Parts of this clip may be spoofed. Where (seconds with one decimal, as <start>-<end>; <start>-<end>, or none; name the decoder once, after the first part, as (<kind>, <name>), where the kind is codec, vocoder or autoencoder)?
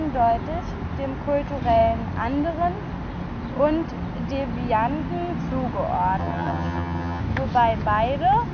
6.2-7.2 (vocoder, HiFi-GAN)